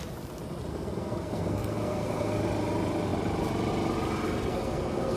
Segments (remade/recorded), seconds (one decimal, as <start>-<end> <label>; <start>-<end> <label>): 0.0-0.7 recorded; 0.7-2.4 remade; 2.4-4.5 recorded; 4.5-5.2 remade